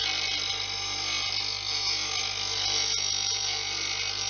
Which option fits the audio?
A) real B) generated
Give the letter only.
A